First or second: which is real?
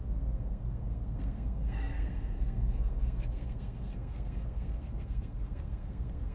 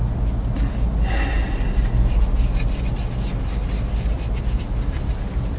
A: second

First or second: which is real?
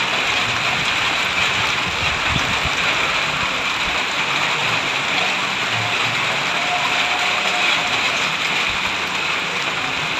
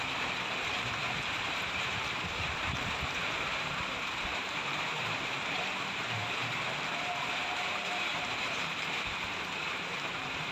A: first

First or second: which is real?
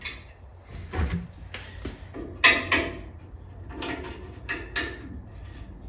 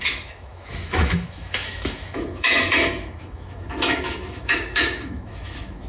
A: first